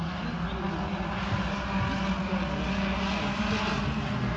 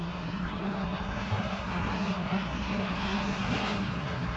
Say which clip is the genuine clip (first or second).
first